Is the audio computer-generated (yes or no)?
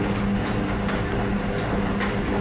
no